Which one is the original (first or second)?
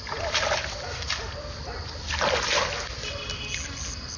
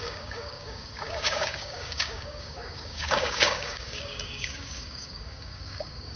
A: first